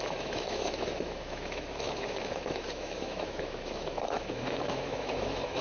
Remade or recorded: remade